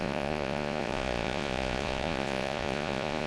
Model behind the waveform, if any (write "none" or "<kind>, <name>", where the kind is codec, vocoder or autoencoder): vocoder, Vocos